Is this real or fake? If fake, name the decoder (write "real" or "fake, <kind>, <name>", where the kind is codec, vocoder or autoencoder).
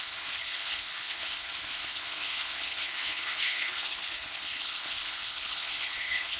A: fake, codec, HILCodec